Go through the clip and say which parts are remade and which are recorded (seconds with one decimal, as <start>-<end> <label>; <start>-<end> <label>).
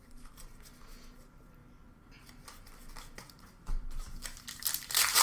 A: 0.0-5.2 recorded